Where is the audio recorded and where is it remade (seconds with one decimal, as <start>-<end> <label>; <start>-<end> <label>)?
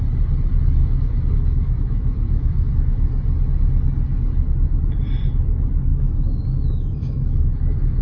0.0-0.8 recorded; 0.8-2.7 remade; 2.7-5.9 recorded; 5.9-8.0 remade